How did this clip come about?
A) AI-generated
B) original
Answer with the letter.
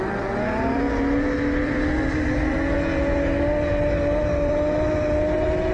B